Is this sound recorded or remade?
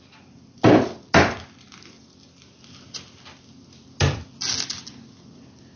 recorded